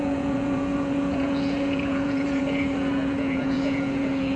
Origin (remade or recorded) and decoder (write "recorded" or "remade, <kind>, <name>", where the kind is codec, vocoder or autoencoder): remade, vocoder, Vocos